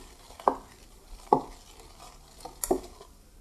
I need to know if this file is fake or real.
real